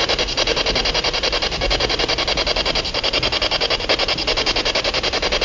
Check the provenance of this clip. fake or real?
real